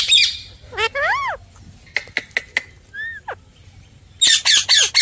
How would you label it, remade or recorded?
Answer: recorded